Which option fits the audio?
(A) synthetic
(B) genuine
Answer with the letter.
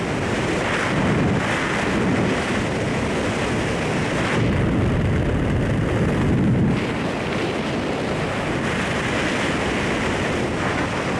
B